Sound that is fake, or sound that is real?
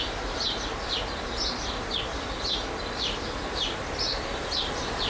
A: real